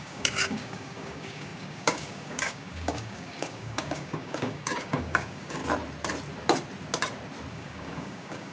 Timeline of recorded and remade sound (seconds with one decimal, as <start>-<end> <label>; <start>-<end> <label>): 0.0-5.6 remade; 5.6-7.5 recorded; 7.5-8.5 remade